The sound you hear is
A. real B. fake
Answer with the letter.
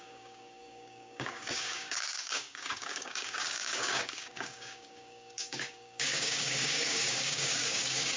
B